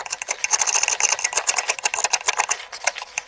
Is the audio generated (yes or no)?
no